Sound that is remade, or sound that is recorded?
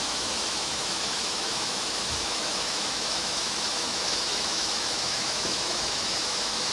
remade